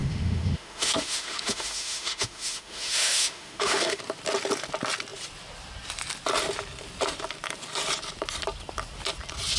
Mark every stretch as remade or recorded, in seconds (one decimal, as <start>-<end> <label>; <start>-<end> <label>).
0.0-4.0 remade; 4.0-9.6 recorded